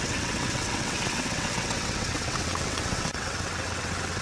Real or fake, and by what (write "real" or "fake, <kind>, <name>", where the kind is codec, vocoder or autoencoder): fake, vocoder, WaveNeXt